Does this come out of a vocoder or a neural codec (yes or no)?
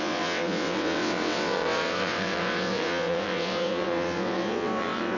yes